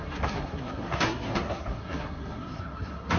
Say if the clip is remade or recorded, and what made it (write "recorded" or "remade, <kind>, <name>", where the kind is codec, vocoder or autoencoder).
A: remade, codec, SNAC